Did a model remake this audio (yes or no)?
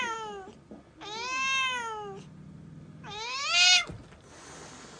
no